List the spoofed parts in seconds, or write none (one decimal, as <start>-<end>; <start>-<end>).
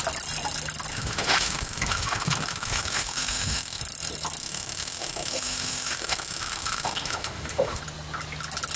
0.9-3.8; 4.4-7.8